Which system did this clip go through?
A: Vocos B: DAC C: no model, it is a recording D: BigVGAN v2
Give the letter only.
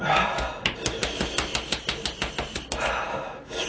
C